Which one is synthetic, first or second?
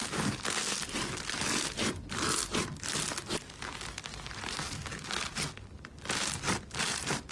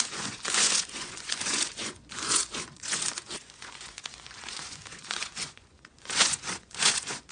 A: second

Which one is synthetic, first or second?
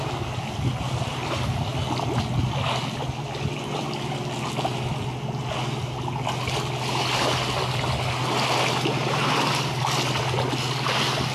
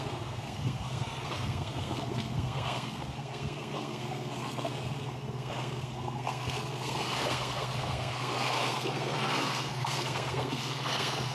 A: second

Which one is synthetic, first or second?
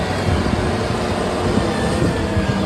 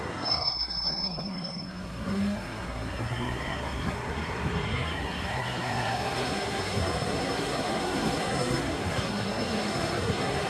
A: second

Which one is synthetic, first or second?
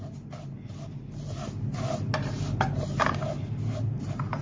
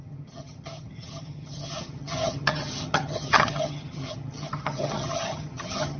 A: second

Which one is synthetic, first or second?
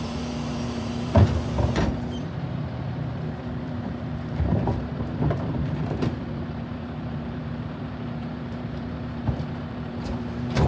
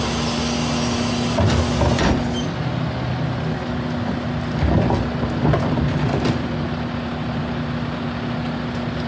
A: first